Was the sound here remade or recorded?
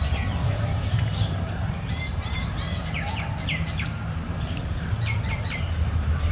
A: remade